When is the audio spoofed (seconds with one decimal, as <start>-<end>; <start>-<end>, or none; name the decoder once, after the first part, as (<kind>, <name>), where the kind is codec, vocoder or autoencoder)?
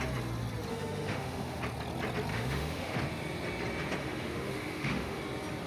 0.7-1.6 (autoencoder, DAC-VAE); 2.3-3.0; 4.0-5.2